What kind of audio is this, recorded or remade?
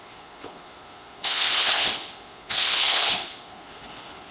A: remade